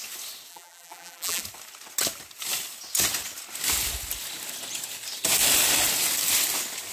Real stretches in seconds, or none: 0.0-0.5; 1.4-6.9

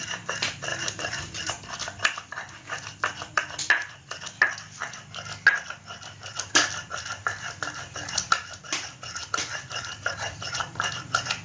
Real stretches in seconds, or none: 0.0-0.7; 1.5-8.4; 8.9-11.4